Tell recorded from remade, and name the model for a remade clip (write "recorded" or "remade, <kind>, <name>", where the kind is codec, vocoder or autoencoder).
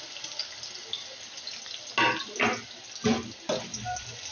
recorded